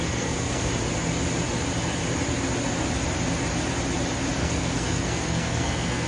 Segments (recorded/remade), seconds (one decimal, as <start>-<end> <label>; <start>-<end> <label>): 0.0-0.7 remade; 0.7-4.4 recorded; 4.4-6.1 remade